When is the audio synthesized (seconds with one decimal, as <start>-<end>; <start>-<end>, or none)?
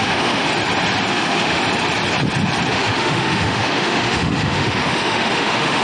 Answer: 0.0-0.5; 1.1-1.6; 2.7-5.8